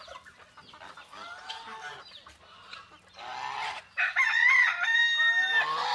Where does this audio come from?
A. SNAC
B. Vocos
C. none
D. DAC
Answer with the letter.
C